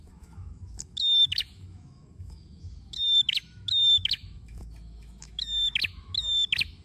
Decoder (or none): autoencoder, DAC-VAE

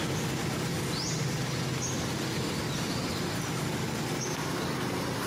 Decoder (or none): none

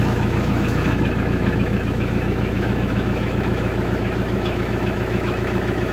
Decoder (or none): autoencoder, DAC-VAE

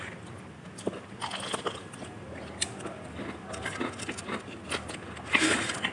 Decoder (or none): none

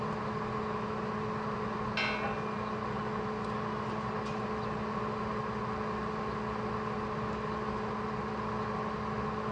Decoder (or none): none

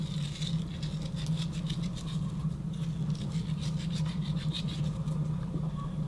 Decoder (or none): none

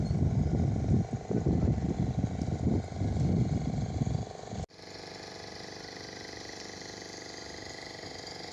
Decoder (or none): none